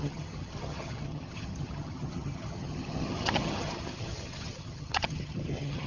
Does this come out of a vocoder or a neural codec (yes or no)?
yes